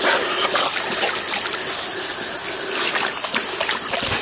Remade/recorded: recorded